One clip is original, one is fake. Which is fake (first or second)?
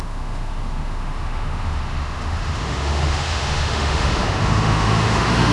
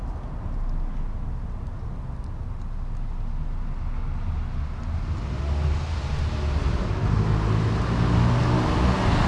first